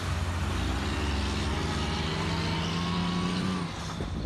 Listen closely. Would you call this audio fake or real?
real